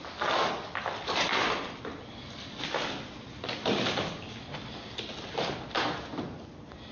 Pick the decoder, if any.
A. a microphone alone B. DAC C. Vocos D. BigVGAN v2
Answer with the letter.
A